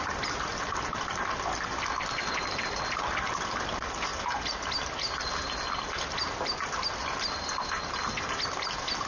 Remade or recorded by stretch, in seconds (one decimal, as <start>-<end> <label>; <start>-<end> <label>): 0.0-9.1 recorded